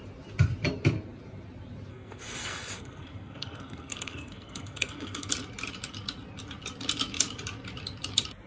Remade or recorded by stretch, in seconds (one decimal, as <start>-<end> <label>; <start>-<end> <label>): 0.0-1.9 recorded; 1.9-5.3 remade; 5.3-8.5 recorded